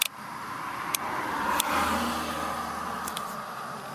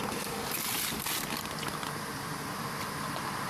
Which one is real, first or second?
first